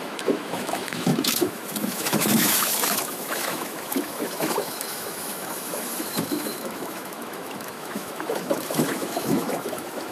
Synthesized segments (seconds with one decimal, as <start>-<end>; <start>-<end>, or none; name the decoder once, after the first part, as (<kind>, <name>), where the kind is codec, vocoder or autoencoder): 0.0-10.1 (autoencoder, DAC-VAE)